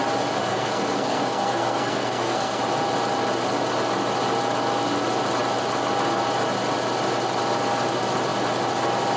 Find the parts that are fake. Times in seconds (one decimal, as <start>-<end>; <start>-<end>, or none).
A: 0.5-2.6